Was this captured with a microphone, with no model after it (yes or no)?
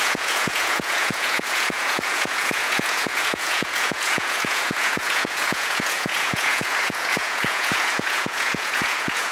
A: no